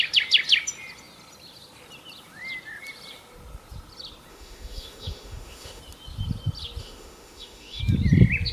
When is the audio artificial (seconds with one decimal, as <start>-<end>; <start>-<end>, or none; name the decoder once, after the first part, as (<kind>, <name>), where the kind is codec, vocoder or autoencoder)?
4.3-5.8 (autoencoder, DAC-VAE); 6.8-7.8